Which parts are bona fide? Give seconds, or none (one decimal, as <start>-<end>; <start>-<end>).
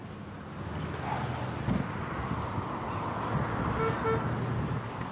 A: 0.0-5.1